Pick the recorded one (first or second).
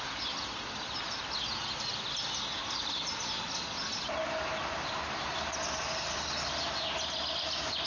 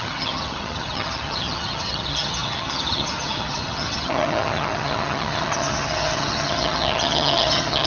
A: first